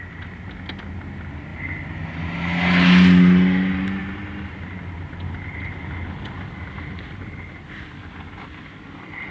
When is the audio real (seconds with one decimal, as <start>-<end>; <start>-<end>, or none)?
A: 0.0-1.5; 2.2-4.0; 8.6-9.3